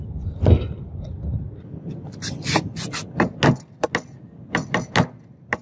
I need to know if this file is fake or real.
real